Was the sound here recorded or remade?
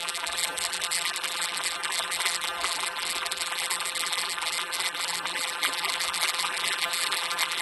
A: remade